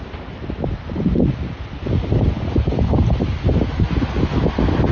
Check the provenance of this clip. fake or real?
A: real